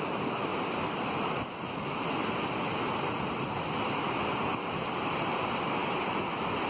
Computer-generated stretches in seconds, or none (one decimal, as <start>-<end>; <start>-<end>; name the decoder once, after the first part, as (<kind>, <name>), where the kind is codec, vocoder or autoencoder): none